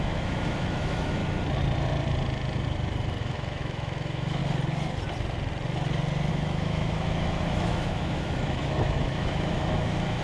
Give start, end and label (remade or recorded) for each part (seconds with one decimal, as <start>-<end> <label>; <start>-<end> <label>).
0.0-1.2 remade; 1.2-3.2 recorded; 3.2-4.4 remade; 4.4-6.3 recorded; 6.3-10.2 remade